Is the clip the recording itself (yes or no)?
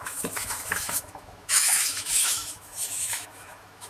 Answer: no